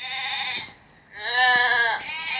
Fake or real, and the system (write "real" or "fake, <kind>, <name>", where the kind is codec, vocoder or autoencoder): real